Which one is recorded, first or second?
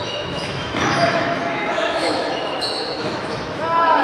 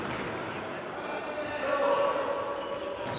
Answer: second